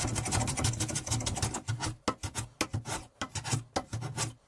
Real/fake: real